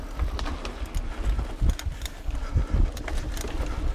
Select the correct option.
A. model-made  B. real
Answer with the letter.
B